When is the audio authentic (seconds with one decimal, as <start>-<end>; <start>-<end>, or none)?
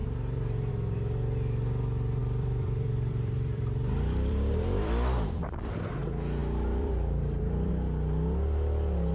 0.7-2.2; 5.6-6.4; 7.7-9.1